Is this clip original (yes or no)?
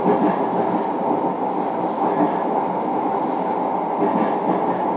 yes